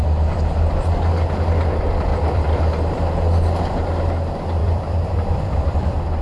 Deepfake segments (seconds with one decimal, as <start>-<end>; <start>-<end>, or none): 0.0-0.8; 2.1-2.6; 4.6-6.2